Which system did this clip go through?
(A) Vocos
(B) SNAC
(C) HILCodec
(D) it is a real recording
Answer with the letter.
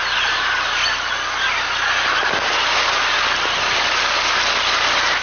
D